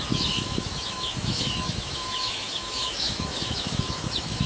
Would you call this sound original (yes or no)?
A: no